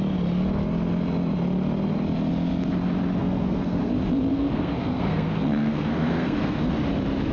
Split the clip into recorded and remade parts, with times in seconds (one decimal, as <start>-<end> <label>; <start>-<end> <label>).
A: 0.0-3.2 recorded; 3.2-3.9 remade; 3.9-4.3 recorded; 4.3-6.7 remade; 6.7-7.3 recorded